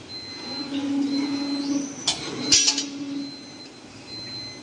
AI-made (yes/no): no